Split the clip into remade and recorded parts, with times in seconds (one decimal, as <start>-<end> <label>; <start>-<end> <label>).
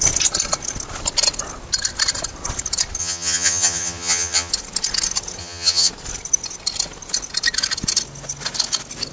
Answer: 0.0-3.0 recorded; 3.0-4.5 remade; 4.5-5.4 recorded; 5.4-5.9 remade; 5.9-9.1 recorded